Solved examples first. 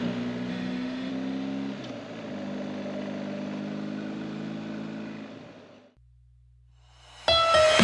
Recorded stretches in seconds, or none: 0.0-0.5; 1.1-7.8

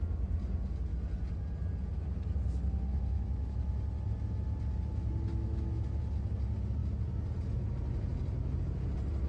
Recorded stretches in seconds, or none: 0.0-2.9; 3.6-5.3; 6.0-9.3

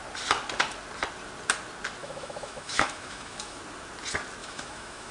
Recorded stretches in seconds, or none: 0.0-2.0; 3.6-4.4

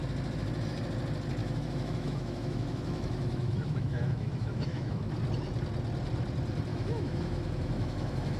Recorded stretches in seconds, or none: 0.0-1.4; 5.1-6.7